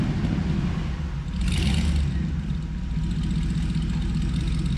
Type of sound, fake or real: real